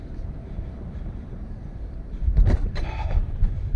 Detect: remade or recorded remade